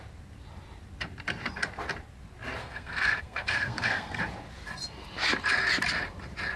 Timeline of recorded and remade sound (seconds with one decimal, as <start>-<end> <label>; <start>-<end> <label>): 0.0-2.6 recorded; 2.6-4.2 remade; 4.2-6.6 recorded